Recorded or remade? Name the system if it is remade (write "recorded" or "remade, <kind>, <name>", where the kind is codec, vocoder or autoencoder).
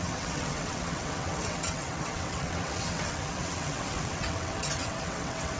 remade, vocoder, WaveNeXt